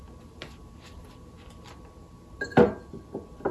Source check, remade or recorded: recorded